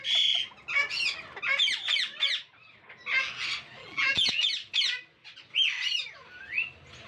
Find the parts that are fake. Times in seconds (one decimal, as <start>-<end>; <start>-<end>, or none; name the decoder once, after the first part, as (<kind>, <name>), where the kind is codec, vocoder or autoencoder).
3.8-4.3 (vocoder, BigVGAN v2)